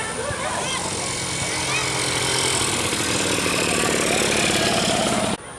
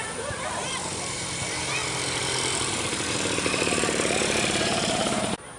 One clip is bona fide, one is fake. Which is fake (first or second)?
second